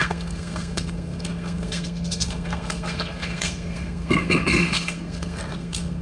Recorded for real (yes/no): no